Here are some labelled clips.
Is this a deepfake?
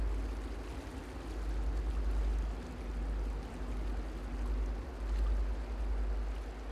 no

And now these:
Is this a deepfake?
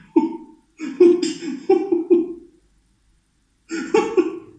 no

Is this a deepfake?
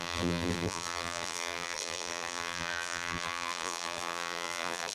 yes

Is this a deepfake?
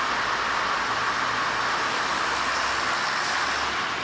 no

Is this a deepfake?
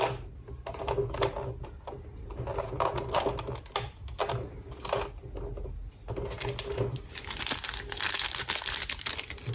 no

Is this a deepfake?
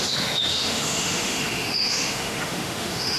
yes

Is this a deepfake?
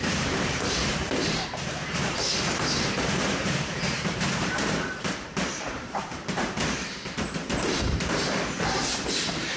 yes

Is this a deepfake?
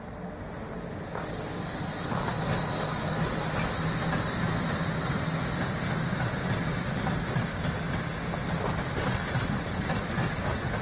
no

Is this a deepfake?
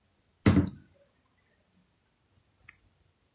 no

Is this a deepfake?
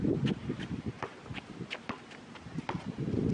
no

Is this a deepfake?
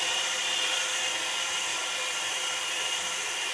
yes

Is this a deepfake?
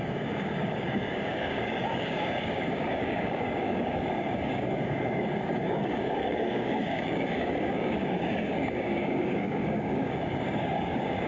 yes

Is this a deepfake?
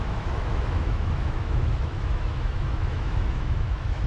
yes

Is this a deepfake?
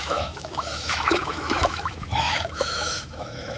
yes